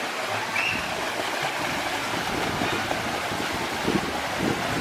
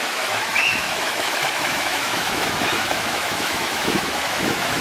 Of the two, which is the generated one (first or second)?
second